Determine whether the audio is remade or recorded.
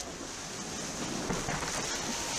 recorded